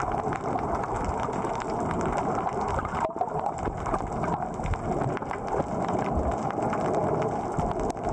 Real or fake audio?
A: real